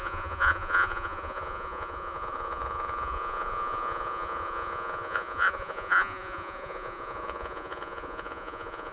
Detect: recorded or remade remade